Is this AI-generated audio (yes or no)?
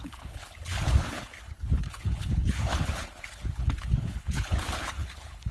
yes